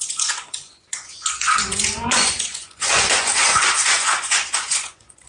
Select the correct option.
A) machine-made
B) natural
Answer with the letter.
A